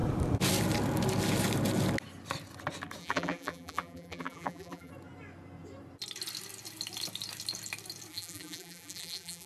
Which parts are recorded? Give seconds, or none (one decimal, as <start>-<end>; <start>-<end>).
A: 0.0-3.0; 4.9-8.1